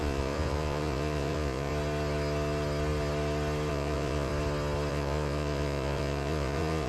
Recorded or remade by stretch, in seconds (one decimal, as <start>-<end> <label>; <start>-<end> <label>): 0.0-1.7 remade; 1.7-3.7 recorded; 3.7-4.3 remade; 4.3-4.9 recorded; 4.9-6.9 remade